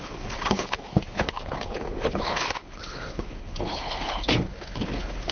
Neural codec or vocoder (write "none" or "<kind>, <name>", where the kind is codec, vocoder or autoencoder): codec, HILCodec